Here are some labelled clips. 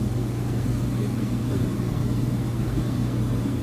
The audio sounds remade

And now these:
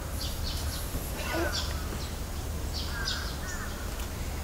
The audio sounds recorded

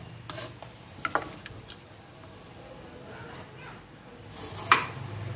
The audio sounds recorded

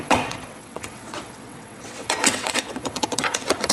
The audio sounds remade